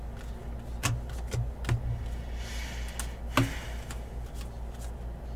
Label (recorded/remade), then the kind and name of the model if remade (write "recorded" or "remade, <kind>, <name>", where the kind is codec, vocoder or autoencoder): recorded